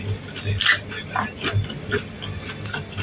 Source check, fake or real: real